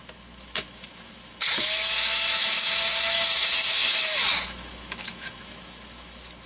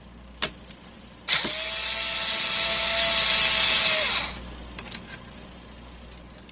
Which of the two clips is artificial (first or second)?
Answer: first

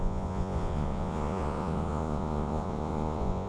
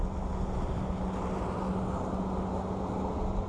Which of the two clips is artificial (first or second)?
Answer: first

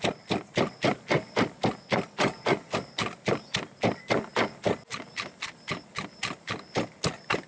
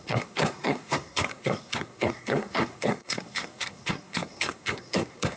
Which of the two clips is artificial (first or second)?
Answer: second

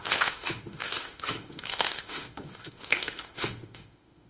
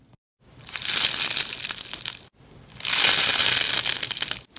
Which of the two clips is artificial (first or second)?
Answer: first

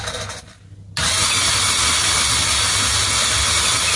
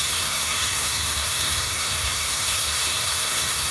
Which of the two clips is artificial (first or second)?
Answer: second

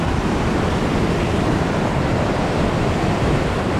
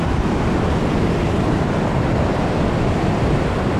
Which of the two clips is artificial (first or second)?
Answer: first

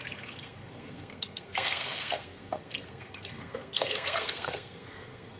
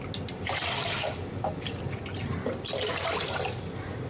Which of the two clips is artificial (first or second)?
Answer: first